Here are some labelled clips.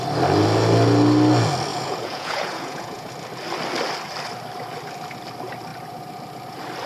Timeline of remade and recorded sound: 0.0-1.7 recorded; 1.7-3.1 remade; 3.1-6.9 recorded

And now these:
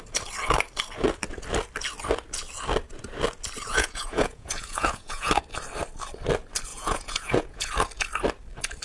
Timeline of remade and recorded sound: 0.0-3.7 recorded; 3.7-5.3 remade; 5.3-6.7 recorded; 6.7-7.7 remade; 7.7-8.8 recorded

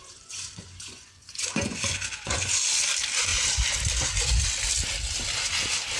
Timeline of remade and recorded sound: 0.0-2.5 remade; 2.5-6.0 recorded

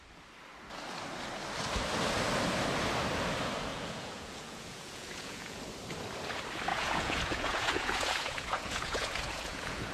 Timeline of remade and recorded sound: 0.0-3.7 recorded; 3.7-5.6 remade; 5.6-6.7 recorded; 6.7-9.9 remade